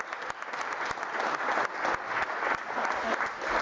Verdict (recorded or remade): recorded